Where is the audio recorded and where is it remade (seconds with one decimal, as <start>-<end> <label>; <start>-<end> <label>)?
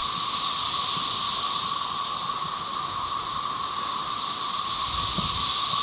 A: 0.0-5.8 recorded